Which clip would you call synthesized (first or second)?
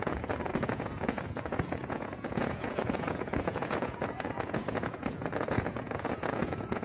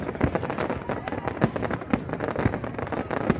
first